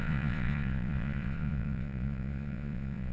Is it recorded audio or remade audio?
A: remade